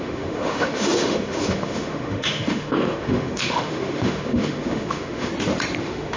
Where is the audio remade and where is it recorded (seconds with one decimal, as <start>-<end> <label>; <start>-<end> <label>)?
0.0-5.3 remade; 5.3-5.8 recorded; 5.8-6.2 remade